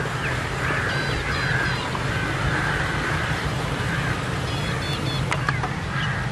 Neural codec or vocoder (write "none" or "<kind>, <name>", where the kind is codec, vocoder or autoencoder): none